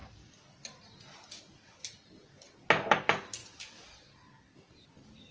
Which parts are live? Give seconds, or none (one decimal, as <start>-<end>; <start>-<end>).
0.0-5.3